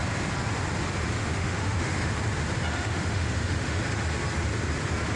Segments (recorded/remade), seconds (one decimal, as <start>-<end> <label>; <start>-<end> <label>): 0.0-1.2 recorded; 1.2-2.1 remade; 2.1-2.7 recorded; 2.7-3.8 remade; 3.8-5.2 recorded